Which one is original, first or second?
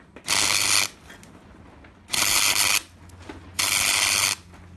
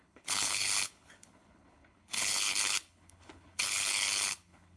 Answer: first